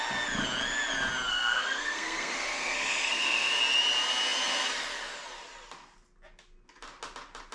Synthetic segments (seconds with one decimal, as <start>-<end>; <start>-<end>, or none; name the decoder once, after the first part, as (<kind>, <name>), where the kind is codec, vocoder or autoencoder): 1.3-3.6 (codec, SNAC)